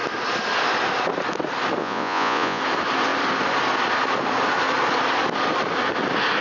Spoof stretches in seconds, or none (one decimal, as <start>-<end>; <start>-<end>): 1.8-2.6